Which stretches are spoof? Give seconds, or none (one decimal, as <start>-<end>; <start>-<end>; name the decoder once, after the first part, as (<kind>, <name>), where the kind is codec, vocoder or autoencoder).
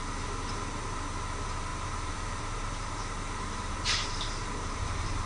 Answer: 1.7-5.3 (vocoder, BigVGAN v2)